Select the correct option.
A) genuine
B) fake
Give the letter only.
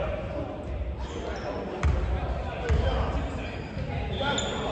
A